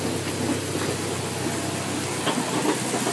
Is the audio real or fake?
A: real